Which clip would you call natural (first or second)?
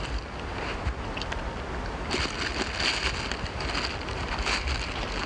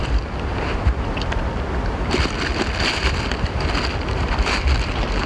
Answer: first